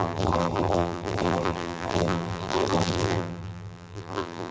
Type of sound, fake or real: fake